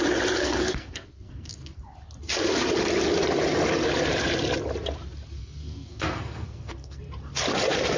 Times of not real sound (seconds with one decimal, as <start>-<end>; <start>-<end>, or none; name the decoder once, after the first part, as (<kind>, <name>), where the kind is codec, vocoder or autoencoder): 0.4-1.8 (codec, SNAC); 5.4-7.0